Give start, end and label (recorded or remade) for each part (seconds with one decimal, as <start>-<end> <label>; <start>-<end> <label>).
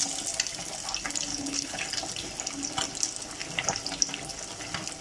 0.0-1.3 recorded; 1.3-1.8 remade; 1.8-5.0 recorded